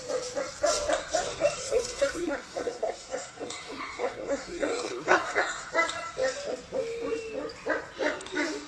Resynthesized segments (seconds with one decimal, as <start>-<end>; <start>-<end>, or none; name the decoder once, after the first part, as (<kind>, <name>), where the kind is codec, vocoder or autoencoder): 1.6-5.7 (codec, SNAC)

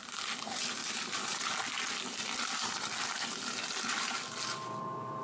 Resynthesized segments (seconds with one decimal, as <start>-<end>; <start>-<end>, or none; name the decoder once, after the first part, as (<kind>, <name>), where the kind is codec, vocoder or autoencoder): none

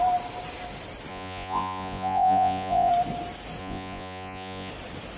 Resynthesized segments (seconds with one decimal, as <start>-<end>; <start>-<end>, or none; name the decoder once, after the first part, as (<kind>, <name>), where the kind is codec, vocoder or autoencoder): 1.1-2.9 (vocoder, Vocos); 3.6-4.7

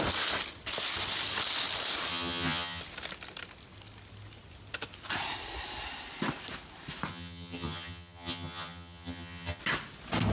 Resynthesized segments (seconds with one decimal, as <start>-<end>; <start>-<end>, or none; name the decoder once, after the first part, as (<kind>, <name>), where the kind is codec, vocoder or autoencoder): 2.1-2.8 (vocoder, HiFi-GAN); 7.1-9.6

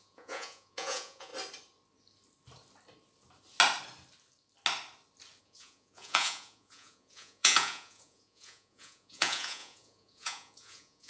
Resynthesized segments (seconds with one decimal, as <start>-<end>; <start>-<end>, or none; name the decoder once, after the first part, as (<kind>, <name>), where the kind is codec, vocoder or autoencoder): 0.0-1.3 (vocoder, Vocos); 5.4-11.1

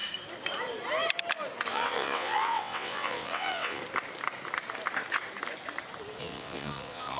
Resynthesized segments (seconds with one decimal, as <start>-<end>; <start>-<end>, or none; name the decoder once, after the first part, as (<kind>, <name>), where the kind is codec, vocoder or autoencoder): 1.7-3.8 (vocoder, WaveNeXt); 6.2-7.2

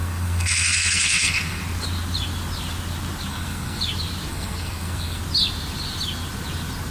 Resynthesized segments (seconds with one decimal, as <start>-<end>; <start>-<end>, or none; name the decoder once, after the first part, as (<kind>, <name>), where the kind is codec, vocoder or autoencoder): 0.0-1.6 (codec, SNAC); 3.3-3.8; 4.3-5.2

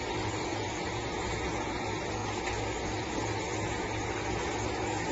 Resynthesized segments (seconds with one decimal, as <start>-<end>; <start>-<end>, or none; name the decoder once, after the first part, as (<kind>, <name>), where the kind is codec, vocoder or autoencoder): 0.5-1.7 (vocoder, Vocos)